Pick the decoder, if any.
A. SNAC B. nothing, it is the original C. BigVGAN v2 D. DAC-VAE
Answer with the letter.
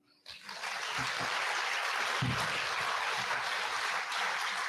B